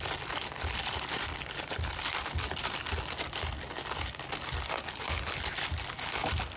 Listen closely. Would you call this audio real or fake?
real